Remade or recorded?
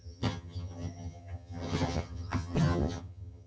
remade